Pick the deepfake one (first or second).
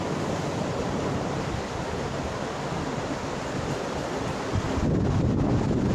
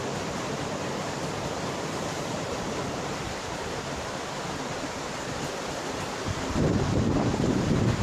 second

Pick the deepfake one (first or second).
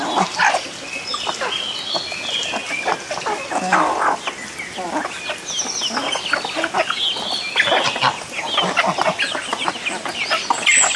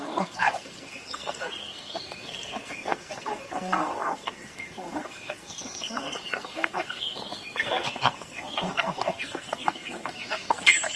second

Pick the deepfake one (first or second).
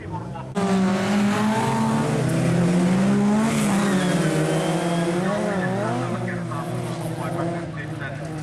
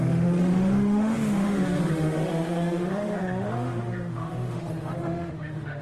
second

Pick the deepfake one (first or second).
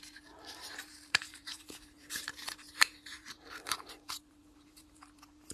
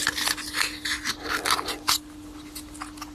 first